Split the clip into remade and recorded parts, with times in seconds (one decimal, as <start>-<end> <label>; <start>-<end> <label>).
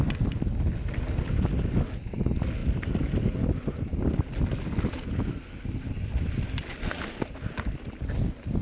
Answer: 0.0-8.6 recorded